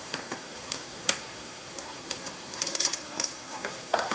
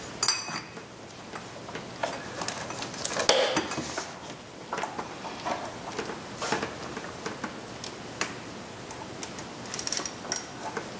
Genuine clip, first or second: second